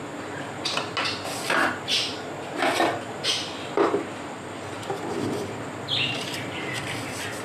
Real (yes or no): yes